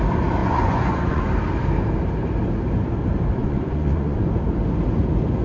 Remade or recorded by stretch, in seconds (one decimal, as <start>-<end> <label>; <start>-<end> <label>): 0.0-0.4 recorded; 0.4-1.2 remade; 1.2-3.4 recorded; 3.4-4.3 remade; 4.3-5.4 recorded